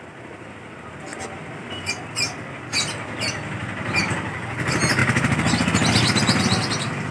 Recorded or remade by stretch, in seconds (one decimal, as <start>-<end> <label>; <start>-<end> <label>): 0.0-1.1 remade; 1.1-4.0 recorded; 4.0-5.0 remade; 5.0-6.4 recorded; 6.4-7.1 remade